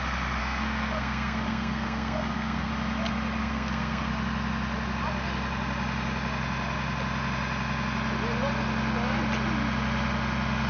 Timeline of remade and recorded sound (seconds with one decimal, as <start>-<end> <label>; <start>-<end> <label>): 0.0-0.4 recorded; 0.4-2.7 remade; 2.7-3.4 recorded; 3.4-4.1 remade; 4.1-10.7 recorded